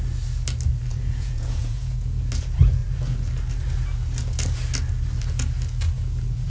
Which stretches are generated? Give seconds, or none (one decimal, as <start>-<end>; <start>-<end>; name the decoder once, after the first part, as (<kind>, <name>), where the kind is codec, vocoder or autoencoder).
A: 0.9-2.3 (vocoder, Vocos)